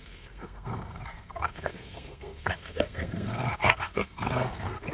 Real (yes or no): no